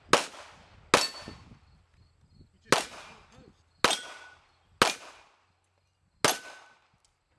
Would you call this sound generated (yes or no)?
no